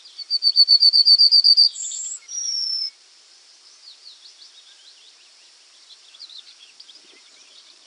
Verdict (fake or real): fake